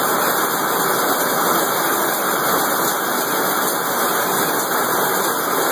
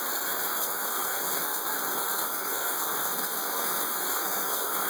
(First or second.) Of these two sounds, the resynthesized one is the second